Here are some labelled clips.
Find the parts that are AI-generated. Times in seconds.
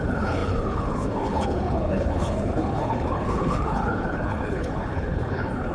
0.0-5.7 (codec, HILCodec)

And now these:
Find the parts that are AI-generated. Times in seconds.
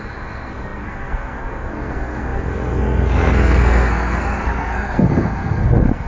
0.0-6.1 (codec, SNAC)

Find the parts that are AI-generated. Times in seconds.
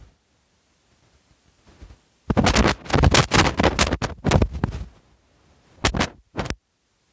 none